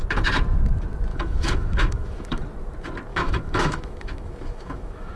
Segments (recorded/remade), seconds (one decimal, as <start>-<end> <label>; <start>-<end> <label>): 0.0-1.1 recorded; 1.1-2.4 remade; 2.4-3.1 recorded; 3.1-5.2 remade